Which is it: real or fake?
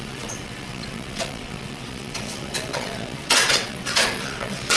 fake